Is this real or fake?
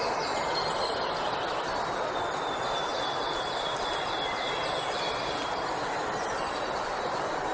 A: real